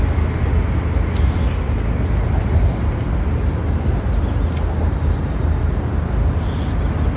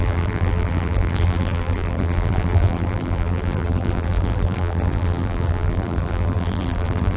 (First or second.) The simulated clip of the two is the second